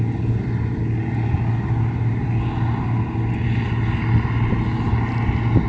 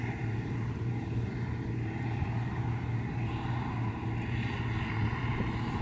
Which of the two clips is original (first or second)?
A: first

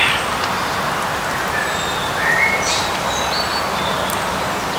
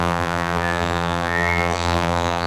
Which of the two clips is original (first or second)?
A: first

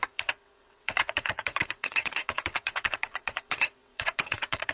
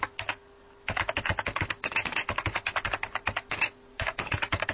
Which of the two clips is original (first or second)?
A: second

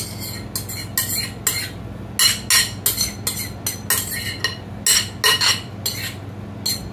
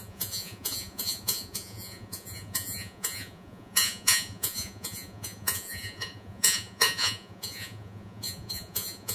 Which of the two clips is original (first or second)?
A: first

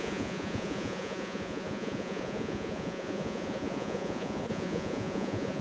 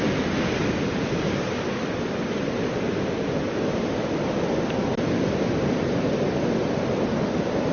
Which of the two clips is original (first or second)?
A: second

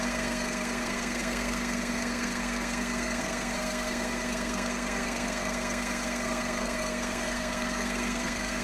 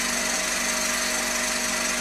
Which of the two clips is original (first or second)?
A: second